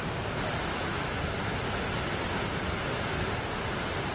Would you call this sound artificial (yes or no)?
no